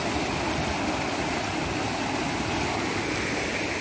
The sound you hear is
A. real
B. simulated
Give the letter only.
A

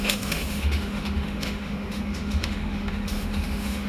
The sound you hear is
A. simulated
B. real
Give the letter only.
A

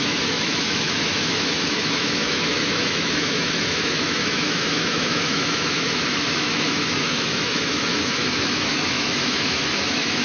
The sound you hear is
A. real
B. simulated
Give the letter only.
B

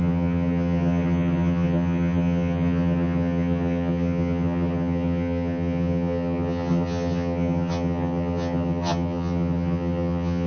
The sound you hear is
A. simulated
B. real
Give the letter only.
A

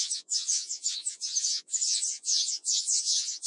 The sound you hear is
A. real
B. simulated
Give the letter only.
B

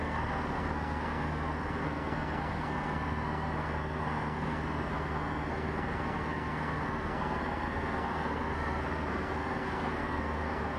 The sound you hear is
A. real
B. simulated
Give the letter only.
B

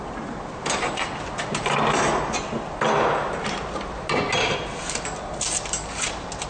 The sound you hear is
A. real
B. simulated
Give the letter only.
A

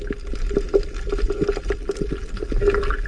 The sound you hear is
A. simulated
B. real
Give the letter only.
B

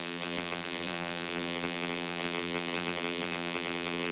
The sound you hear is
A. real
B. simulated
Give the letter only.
B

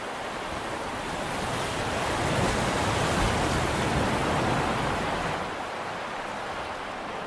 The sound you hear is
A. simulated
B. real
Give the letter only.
B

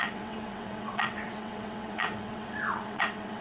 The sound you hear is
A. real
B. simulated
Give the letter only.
B